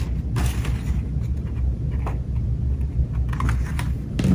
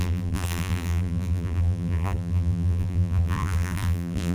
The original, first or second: first